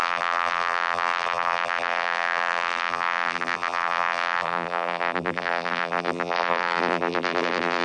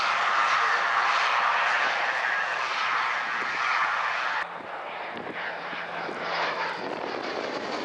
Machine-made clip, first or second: first